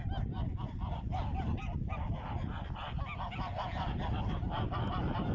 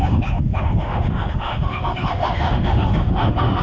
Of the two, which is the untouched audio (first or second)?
first